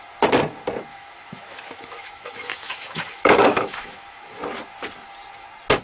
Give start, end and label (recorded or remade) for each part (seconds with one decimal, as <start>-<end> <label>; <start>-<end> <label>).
0.0-0.9 recorded; 0.9-4.4 remade; 4.4-5.8 recorded